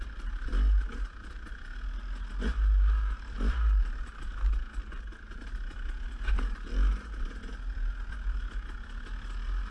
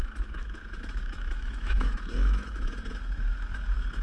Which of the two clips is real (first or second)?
first